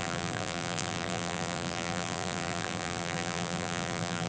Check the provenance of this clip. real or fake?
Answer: fake